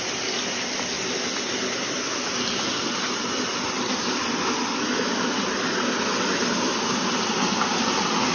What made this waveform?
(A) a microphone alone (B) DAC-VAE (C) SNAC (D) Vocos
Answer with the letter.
A